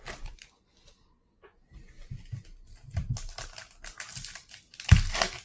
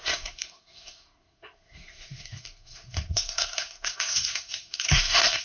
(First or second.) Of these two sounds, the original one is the first